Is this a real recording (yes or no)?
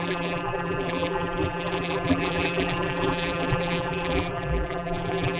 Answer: no